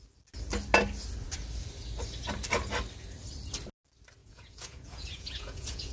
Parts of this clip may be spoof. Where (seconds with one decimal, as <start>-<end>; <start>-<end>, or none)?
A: 4.2-5.9

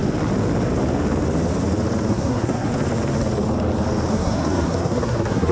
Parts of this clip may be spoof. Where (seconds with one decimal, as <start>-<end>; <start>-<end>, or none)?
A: 2.1-2.7; 4.1-5.5